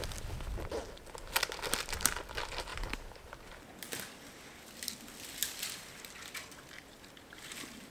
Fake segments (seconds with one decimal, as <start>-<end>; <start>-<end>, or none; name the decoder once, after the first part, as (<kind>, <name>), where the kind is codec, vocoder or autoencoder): 2.7-3.4 (vocoder, BigVGAN v2); 5.4-6.5